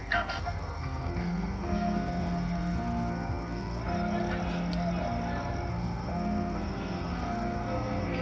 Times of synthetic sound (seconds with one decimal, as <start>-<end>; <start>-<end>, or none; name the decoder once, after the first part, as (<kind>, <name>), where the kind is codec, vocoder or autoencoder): 0.0-3.8 (codec, SNAC); 5.7-8.2